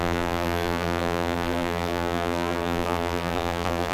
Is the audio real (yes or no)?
no